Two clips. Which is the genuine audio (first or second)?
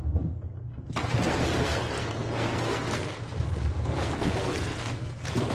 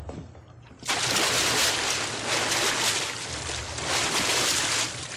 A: second